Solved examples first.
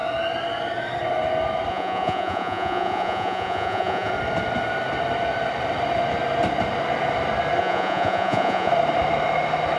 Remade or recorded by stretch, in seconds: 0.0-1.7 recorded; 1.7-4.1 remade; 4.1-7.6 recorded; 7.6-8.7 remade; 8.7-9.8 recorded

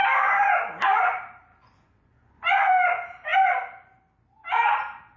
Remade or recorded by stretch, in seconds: 0.0-1.5 recorded; 1.5-2.7 remade; 2.7-5.2 recorded

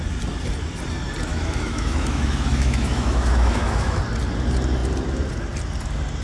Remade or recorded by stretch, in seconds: 0.0-1.3 recorded; 1.3-4.0 remade; 4.0-6.2 recorded

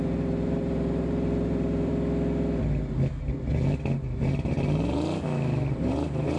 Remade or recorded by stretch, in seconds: 0.0-1.9 remade; 1.9-5.7 recorded; 5.7-6.4 remade

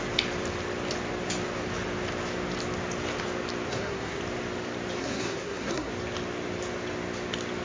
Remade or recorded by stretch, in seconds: 0.0-3.7 recorded; 3.7-4.2 remade; 4.2-5.0 recorded; 5.0-5.9 remade; 5.9-7.6 recorded

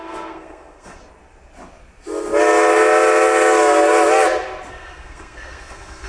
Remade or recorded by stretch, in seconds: 0.0-1.0 remade; 1.0-4.7 recorded; 4.7-6.1 remade

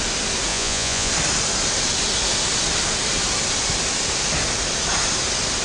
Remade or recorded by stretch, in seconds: 0.0-0.5 recorded; 0.5-1.1 remade; 1.1-5.6 recorded

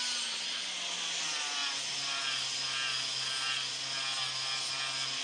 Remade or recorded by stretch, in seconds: 0.0-5.2 recorded